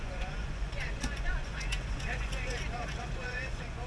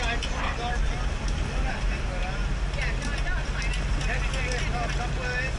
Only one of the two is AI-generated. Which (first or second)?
first